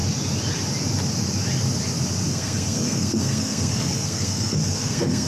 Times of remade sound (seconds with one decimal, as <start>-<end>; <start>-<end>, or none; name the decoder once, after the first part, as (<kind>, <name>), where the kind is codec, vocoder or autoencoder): 2.3-5.3 (codec, SNAC)